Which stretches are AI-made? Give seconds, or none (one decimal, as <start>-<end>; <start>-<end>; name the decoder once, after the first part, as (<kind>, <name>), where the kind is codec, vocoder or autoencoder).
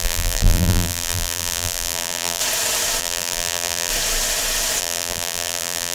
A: 0.0-2.4 (vocoder, BigVGAN v2); 3.0-3.9; 4.8-5.9